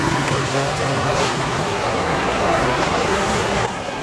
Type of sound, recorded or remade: remade